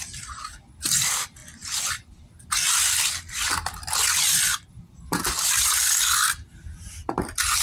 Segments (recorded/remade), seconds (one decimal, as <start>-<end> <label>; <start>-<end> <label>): 0.0-7.6 recorded